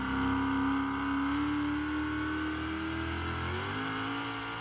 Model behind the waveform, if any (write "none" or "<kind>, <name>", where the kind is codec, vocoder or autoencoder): none